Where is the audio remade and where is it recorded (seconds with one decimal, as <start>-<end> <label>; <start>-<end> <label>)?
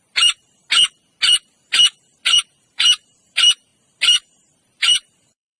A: 0.0-0.6 remade; 0.6-2.5 recorded; 2.5-3.7 remade; 3.7-4.3 recorded; 4.3-5.6 remade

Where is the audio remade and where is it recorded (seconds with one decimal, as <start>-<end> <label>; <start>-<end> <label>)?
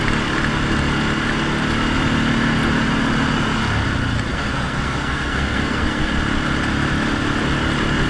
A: 0.0-4.3 recorded; 4.3-6.1 remade; 6.1-8.1 recorded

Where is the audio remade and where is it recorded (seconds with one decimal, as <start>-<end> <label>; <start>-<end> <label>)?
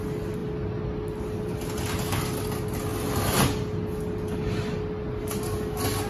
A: 0.0-6.1 recorded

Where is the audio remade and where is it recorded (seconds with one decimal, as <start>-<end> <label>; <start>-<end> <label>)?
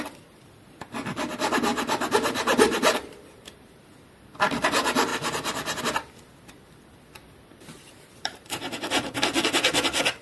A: 0.0-1.7 recorded; 1.7-3.8 remade; 3.8-5.1 recorded; 5.1-5.8 remade; 5.8-7.2 recorded; 7.2-9.3 remade; 9.3-10.2 recorded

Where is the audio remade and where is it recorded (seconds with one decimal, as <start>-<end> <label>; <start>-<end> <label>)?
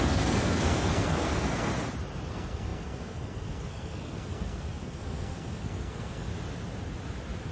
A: 0.0-1.7 remade; 1.7-2.3 recorded; 2.3-6.3 remade; 6.3-7.5 recorded